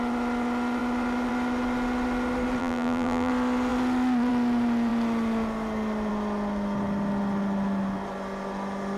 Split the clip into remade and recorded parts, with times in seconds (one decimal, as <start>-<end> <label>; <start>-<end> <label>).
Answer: 0.0-2.6 recorded; 2.6-3.3 remade; 3.3-9.0 recorded